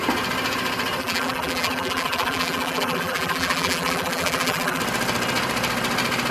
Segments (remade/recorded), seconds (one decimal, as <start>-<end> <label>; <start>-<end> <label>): 0.0-1.0 recorded; 1.0-4.8 remade; 4.8-6.3 recorded